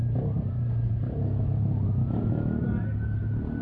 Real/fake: real